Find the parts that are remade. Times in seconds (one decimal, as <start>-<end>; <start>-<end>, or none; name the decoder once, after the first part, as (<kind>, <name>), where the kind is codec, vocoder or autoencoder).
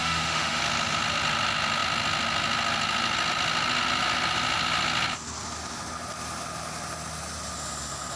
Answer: 0.0-0.6 (autoencoder, DAC-VAE)